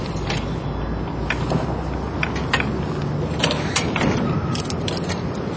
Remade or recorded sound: recorded